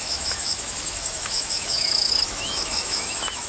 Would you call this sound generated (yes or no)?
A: yes